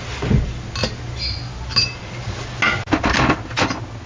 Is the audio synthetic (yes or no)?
no